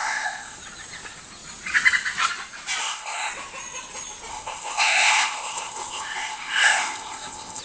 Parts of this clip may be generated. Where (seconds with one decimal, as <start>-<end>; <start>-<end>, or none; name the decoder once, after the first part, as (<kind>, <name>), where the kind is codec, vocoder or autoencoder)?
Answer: 0.0-0.6 (codec, ZipCodec); 2.8-3.3; 4.3-7.6